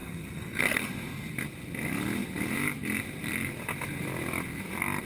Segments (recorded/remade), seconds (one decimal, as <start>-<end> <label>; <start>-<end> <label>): 0.0-0.9 remade; 0.9-5.1 recorded